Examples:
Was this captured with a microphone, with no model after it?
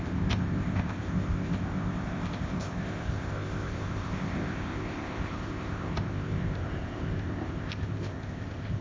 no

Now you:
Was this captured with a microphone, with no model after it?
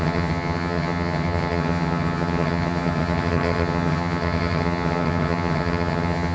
no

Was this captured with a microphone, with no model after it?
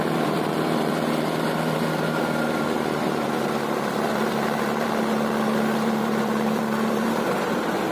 no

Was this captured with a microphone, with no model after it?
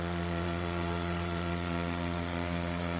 no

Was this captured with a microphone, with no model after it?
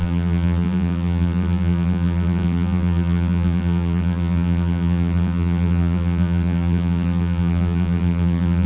no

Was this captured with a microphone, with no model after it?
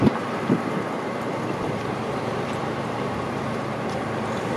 no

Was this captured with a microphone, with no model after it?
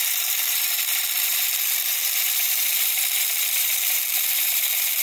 no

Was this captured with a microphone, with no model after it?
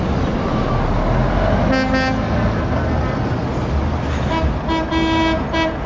yes